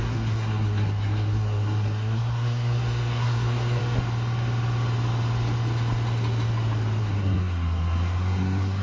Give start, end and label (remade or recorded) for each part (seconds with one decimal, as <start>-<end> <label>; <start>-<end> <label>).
0.0-3.8 remade; 3.8-7.0 recorded; 7.0-8.8 remade